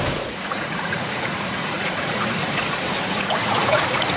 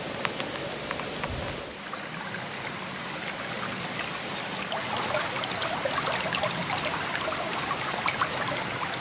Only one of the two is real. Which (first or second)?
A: second